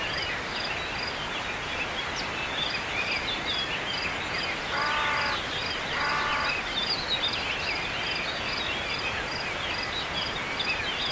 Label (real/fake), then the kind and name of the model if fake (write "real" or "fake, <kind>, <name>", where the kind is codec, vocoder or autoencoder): real